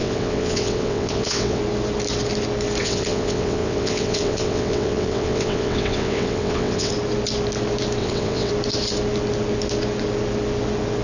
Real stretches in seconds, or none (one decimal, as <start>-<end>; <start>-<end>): 1.6-2.8; 6.9-8.0; 8.5-11.0